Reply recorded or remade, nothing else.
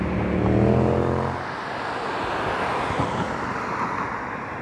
recorded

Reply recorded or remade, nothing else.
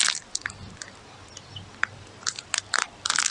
recorded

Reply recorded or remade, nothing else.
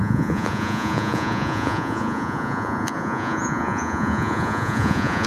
remade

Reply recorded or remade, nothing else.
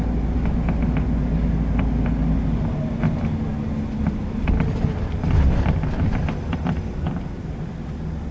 recorded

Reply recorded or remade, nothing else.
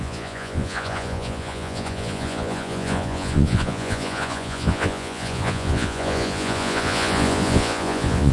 remade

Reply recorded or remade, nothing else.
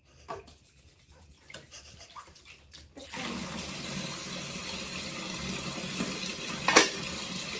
recorded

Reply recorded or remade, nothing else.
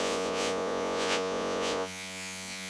remade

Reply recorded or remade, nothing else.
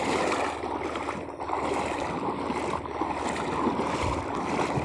recorded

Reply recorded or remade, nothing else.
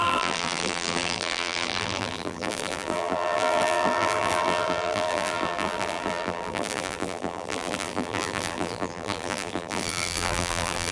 remade